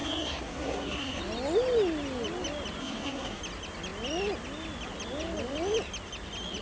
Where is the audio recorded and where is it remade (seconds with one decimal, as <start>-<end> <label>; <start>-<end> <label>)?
0.0-1.2 remade; 1.2-2.8 recorded; 2.8-3.4 remade; 3.4-6.6 recorded